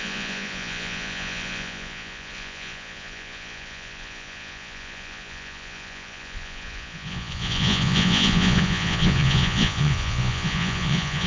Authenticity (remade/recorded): remade